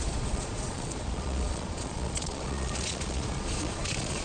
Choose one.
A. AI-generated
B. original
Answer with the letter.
A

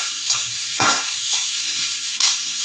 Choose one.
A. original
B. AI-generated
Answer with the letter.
B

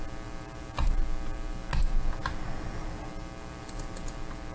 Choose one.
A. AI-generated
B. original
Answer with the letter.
B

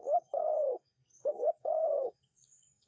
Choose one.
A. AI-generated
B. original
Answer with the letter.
A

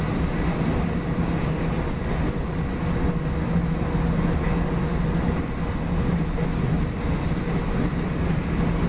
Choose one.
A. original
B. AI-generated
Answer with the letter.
A